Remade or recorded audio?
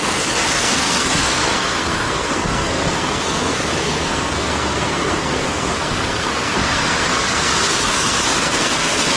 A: remade